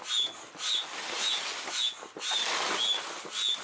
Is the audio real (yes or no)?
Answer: yes